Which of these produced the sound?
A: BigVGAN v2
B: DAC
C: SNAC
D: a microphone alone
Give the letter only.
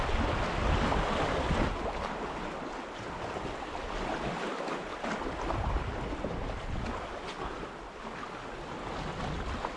D